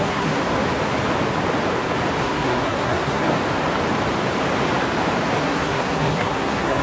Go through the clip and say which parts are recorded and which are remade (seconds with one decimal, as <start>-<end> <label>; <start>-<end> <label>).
0.0-0.4 remade; 0.4-2.2 recorded; 2.2-3.3 remade; 3.3-5.4 recorded; 5.4-6.8 remade